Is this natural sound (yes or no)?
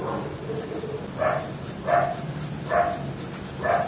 yes